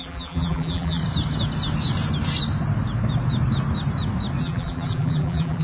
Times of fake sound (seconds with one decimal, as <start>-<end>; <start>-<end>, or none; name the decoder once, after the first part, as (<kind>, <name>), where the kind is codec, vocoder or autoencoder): 0.0-1.0 (vocoder, BigVGAN v2); 4.4-5.6